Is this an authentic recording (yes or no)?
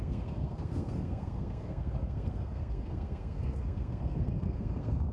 no